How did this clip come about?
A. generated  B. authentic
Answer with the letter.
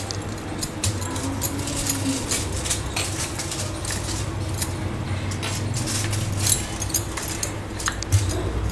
B